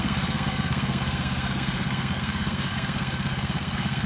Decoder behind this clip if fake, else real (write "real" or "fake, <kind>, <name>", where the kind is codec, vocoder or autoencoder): fake, codec, SNAC